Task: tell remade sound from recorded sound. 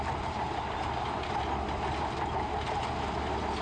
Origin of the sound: recorded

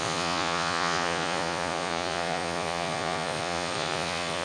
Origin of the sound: remade